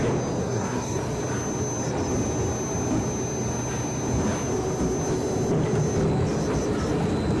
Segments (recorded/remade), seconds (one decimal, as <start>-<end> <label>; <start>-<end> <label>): 0.0-0.4 recorded; 0.4-1.0 remade; 1.0-7.4 recorded